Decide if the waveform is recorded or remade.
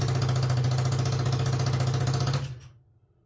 recorded